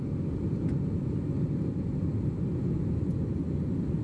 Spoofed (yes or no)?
no